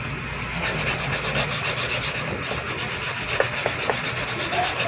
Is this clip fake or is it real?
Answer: real